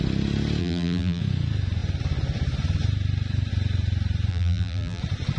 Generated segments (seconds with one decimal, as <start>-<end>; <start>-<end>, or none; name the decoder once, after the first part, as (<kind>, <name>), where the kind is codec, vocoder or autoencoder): 0.6-1.2 (vocoder, BigVGAN v2); 4.3-5.0